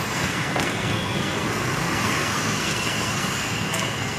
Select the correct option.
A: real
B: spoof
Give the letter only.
B